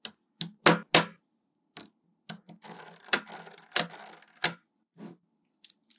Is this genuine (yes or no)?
yes